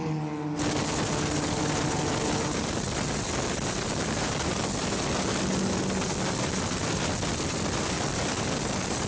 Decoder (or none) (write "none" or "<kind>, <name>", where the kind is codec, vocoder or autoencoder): none